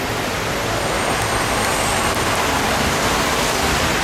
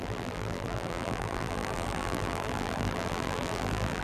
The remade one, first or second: second